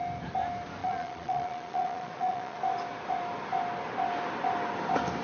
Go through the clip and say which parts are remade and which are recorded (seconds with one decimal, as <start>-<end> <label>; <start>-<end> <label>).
0.0-0.8 recorded; 0.8-2.6 remade; 2.6-5.2 recorded